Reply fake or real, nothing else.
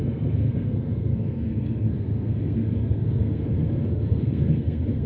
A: fake